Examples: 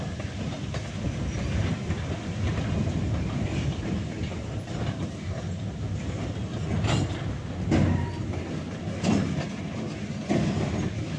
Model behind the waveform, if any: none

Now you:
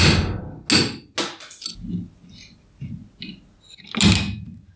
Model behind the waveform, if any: none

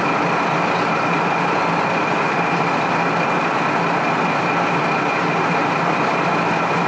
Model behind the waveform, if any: none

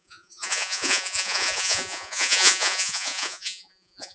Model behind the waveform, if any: vocoder, Vocos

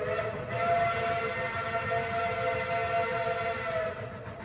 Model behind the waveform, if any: none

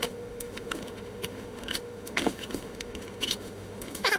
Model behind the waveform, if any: autoencoder, DAC-VAE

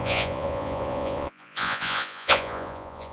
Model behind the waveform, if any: vocoder, Vocos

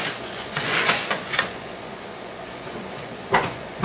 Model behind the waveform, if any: vocoder, Vocos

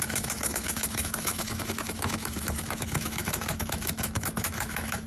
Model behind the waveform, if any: autoencoder, DAC-VAE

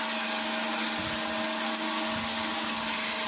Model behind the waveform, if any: none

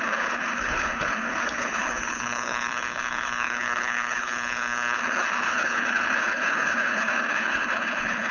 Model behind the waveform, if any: codec, HILCodec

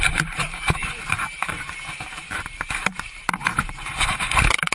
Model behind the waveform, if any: vocoder, BigVGAN v2